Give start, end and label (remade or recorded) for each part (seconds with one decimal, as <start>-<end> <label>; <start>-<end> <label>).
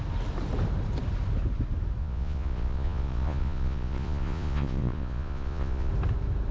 0.0-2.0 recorded; 2.0-5.9 remade; 5.9-6.5 recorded